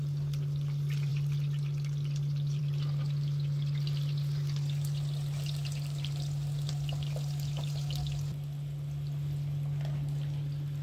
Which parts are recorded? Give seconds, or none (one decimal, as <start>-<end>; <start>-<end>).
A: 0.0-10.8